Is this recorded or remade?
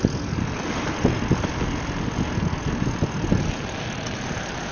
recorded